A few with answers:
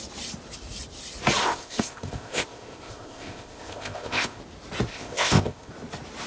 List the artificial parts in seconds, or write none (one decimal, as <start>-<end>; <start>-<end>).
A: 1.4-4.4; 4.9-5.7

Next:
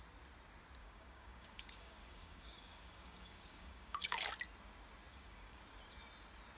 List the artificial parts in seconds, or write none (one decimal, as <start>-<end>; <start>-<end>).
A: 0.8-4.3; 5.1-5.6

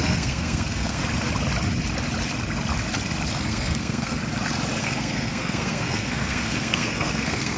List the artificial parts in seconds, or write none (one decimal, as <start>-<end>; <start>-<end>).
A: 0.0-1.0; 3.3-4.2; 4.8-7.6

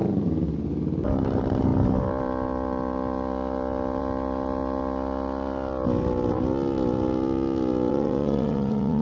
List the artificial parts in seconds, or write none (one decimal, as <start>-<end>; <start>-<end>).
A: 7.9-9.0

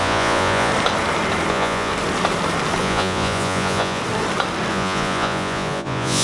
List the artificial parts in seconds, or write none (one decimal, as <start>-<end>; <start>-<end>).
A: 0.0-0.7; 1.5-1.9; 2.8-4.0; 4.7-6.2

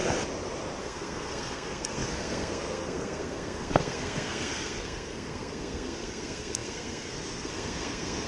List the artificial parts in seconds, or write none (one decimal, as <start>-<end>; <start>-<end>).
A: 0.8-8.3